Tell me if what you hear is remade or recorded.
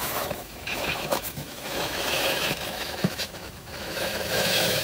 remade